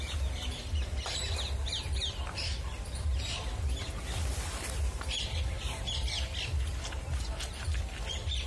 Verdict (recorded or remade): recorded